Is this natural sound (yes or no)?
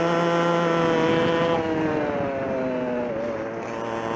yes